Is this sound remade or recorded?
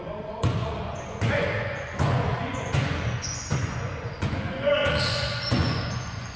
remade